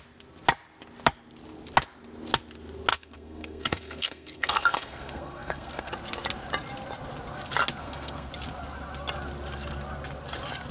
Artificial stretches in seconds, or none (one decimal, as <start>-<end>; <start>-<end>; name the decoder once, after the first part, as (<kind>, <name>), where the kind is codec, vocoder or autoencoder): 2.9-5.9 (codec, SNAC); 7.8-8.3